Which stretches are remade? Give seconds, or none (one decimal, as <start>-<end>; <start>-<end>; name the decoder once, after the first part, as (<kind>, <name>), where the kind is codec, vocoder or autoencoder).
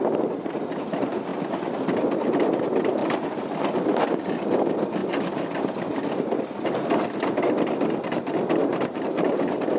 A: 3.0-4.0 (vocoder, BigVGAN v2); 8.7-9.4